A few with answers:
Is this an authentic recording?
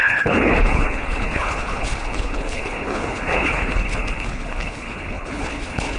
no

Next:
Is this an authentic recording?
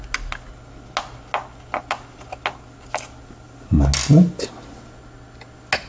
yes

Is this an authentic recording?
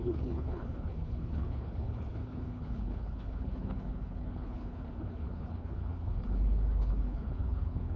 no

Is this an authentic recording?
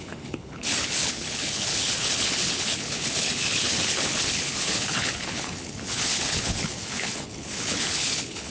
no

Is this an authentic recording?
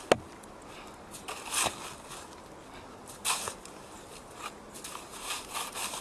yes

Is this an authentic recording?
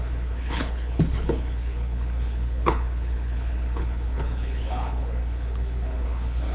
no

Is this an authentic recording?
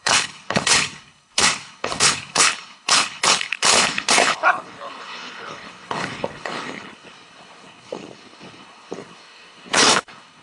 no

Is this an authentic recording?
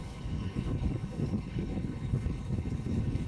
no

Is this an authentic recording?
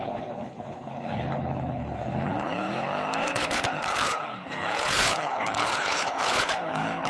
no